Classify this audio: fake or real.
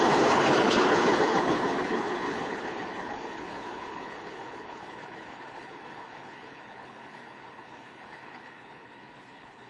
fake